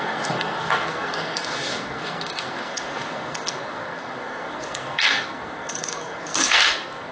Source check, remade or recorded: remade